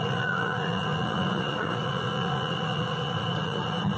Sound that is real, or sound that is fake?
fake